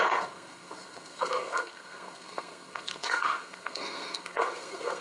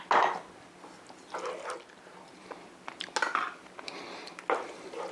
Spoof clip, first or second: first